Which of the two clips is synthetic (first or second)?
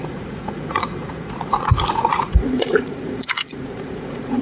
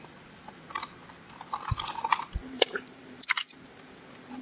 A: first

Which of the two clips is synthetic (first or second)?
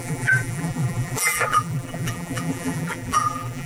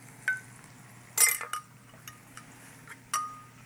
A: first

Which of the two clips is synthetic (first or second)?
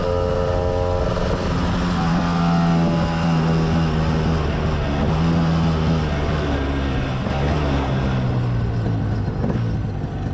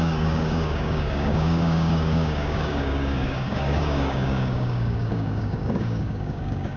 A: second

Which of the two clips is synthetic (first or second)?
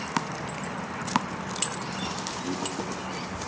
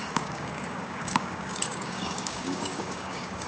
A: second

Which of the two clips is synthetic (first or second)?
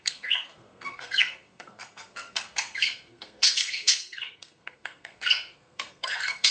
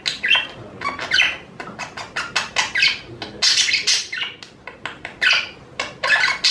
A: first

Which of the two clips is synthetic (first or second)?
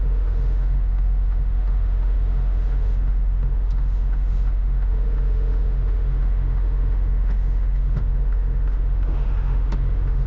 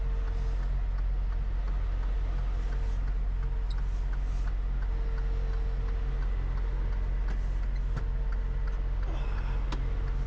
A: first